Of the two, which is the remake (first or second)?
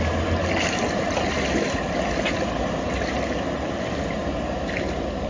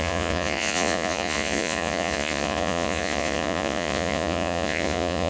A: second